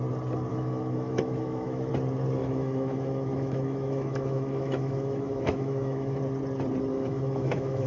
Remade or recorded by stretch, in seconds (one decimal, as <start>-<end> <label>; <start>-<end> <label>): 0.0-0.5 recorded; 0.5-1.9 remade; 1.9-2.4 recorded; 2.4-6.2 remade; 6.2-6.9 recorded; 6.9-7.9 remade